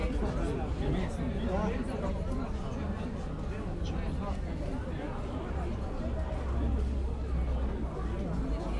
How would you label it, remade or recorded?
recorded